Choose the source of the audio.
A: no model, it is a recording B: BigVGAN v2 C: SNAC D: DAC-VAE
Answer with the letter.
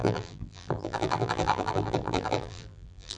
B